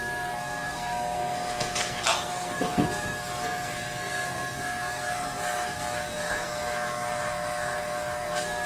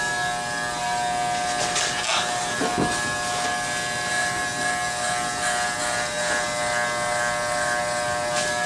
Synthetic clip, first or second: first